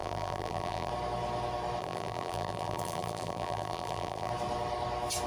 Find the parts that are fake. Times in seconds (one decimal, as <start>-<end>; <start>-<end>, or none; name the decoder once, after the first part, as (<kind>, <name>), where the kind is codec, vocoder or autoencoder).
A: 0.0-0.9 (vocoder, BigVGAN v2); 1.8-4.3